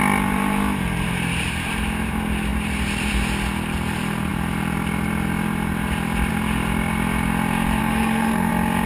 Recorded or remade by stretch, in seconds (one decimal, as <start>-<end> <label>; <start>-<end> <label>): 0.0-7.8 recorded; 7.8-8.5 remade; 8.5-8.9 recorded